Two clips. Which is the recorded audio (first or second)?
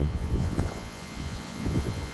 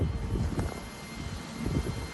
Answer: second